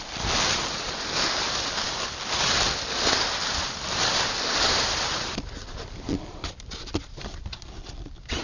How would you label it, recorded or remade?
remade